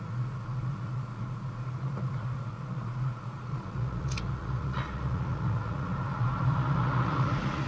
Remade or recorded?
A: remade